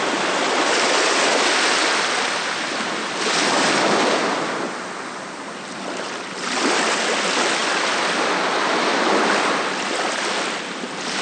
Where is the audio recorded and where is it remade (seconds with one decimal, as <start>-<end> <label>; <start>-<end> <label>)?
0.0-11.2 recorded

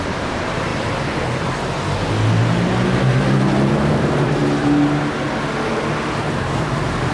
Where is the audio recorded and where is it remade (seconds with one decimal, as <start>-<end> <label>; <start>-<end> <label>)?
0.0-0.7 remade; 0.7-3.7 recorded; 3.7-4.4 remade; 4.4-6.2 recorded; 6.2-7.1 remade